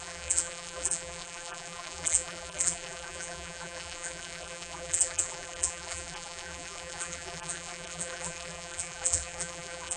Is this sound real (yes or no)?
no